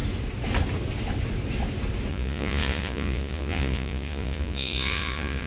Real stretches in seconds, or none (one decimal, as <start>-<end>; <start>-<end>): 0.0-2.1